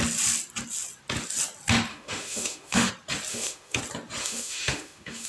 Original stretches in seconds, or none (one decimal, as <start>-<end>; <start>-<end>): 0.0-1.9; 2.9-3.3; 3.8-4.2